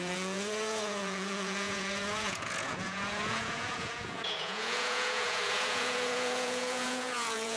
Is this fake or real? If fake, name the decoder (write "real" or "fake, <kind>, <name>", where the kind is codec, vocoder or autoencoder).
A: fake, vocoder, Vocos